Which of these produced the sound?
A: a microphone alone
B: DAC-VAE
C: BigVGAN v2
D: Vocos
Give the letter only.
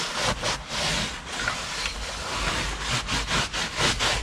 A